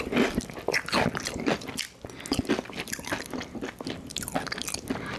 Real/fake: real